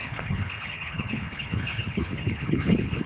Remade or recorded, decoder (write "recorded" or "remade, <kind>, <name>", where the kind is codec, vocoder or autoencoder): remade, codec, HILCodec